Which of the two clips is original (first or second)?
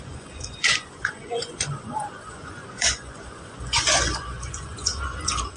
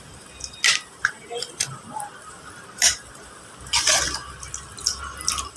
second